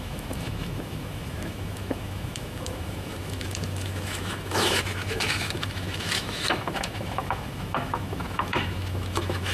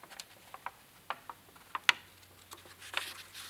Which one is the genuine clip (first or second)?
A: second